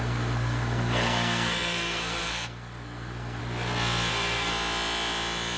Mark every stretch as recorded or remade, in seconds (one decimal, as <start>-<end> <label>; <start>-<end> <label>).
0.0-3.4 remade; 3.4-4.1 recorded; 4.1-4.5 remade; 4.5-5.6 recorded